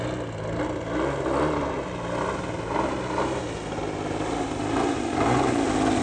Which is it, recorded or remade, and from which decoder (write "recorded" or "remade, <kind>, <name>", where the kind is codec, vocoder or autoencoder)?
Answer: recorded